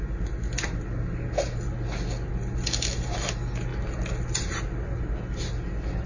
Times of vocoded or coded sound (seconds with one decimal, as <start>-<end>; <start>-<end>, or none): none